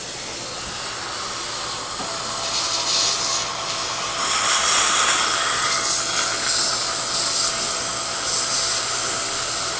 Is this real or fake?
real